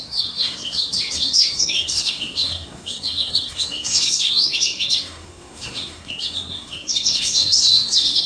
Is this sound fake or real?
fake